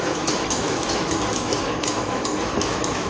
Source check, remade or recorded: remade